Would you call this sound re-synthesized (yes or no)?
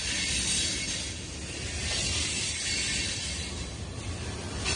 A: no